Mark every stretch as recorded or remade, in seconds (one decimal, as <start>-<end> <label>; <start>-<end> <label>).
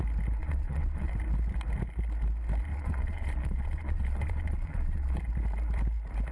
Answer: 0.0-0.4 recorded; 0.4-1.1 remade; 1.1-2.7 recorded; 2.7-5.2 remade; 5.2-6.3 recorded